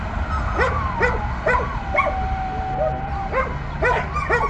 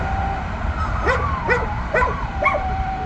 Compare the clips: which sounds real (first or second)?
first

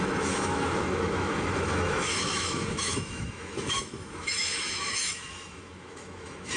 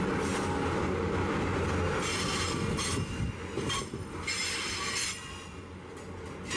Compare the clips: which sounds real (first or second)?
second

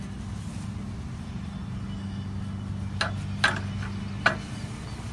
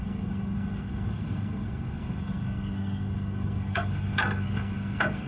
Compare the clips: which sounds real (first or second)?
first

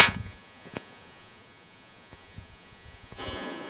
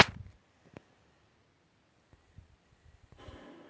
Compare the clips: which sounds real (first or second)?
second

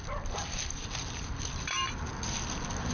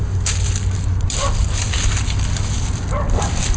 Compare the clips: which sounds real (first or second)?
second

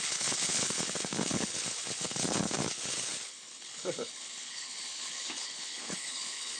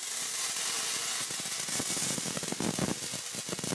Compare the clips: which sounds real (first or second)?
second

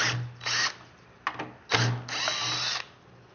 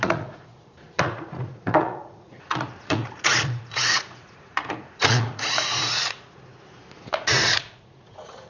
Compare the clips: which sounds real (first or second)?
first